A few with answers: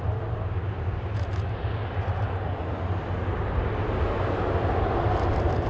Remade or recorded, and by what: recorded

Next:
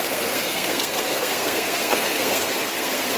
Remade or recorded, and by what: remade, codec, SNAC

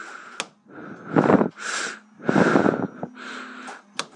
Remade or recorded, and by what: recorded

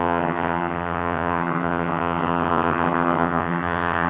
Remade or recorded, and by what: remade, vocoder, HiFi-GAN